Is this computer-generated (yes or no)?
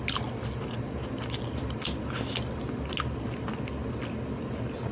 no